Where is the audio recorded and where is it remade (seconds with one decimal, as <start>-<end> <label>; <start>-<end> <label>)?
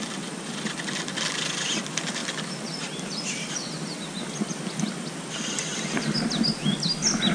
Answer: 0.0-7.3 recorded